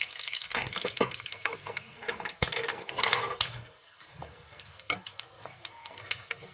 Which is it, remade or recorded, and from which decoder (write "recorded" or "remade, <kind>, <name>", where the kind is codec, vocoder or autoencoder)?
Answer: remade, codec, SNAC